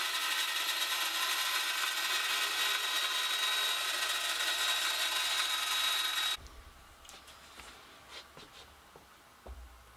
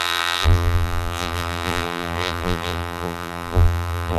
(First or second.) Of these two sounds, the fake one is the second